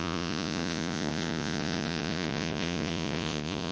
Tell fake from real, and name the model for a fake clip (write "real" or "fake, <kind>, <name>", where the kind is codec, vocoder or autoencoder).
fake, vocoder, Vocos